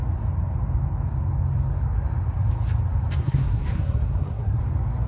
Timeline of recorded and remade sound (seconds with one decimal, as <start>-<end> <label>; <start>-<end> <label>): 0.0-3.2 recorded; 3.2-4.6 remade; 4.6-5.1 recorded